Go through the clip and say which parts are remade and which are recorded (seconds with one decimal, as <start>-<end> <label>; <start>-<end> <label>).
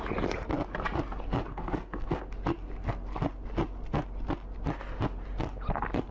0.0-1.5 recorded; 1.5-2.2 remade; 2.2-6.1 recorded